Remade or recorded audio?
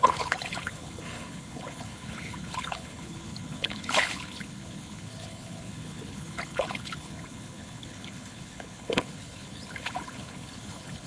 remade